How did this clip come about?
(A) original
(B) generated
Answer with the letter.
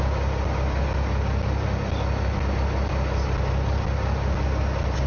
A